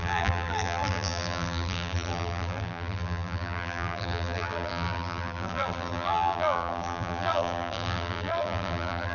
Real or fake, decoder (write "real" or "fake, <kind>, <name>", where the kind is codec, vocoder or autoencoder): fake, vocoder, BigVGAN v2